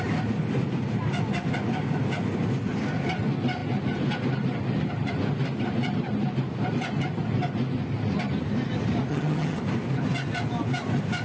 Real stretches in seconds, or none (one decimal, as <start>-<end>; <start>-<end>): 0.0-9.1; 9.6-11.2